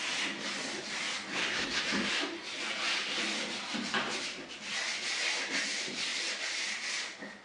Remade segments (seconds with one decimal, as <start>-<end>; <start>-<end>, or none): 1.3-1.8